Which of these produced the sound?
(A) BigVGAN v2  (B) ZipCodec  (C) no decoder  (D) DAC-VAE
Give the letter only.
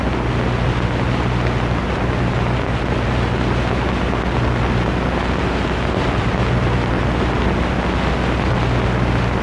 C